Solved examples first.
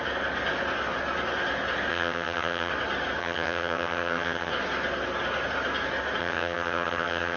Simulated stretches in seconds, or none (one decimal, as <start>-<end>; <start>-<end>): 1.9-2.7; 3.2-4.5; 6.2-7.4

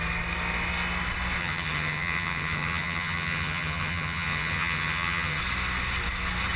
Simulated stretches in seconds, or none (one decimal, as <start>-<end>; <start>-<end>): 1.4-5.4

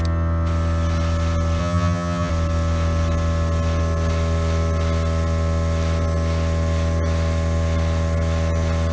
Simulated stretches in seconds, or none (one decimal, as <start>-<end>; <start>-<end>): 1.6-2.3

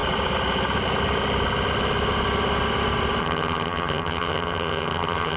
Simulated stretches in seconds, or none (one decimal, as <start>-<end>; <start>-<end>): 3.2-5.4

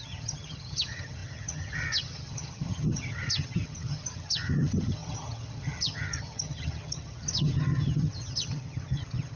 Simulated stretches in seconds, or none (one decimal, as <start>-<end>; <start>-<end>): 0.0-9.4